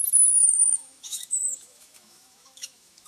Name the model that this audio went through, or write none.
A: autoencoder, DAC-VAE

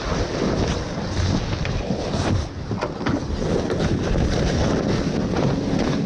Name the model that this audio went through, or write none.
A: none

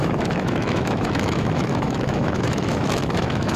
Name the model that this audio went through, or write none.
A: autoencoder, DAC-VAE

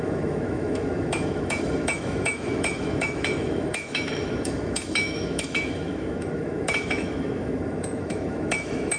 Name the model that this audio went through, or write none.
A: autoencoder, DAC-VAE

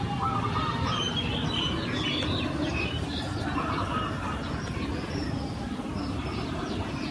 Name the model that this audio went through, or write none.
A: none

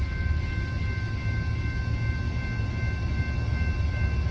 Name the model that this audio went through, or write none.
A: none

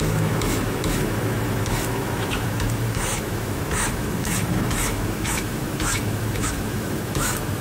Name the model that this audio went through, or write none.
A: autoencoder, DAC-VAE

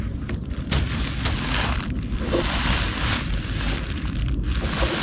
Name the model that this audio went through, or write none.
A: none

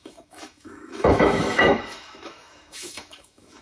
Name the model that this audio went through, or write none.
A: autoencoder, DAC-VAE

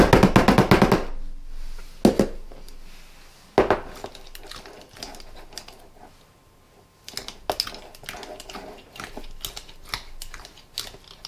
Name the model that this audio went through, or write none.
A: none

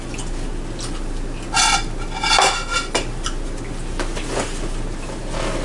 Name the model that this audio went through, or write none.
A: none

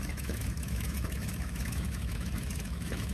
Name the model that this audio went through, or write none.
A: autoencoder, DAC-VAE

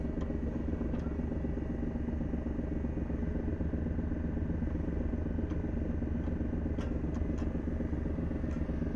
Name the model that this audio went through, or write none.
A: none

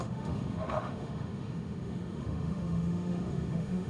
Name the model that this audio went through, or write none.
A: autoencoder, DAC-VAE